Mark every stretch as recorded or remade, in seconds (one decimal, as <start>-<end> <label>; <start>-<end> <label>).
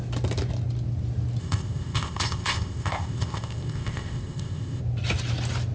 0.0-1.4 recorded; 1.4-4.8 remade; 4.8-5.7 recorded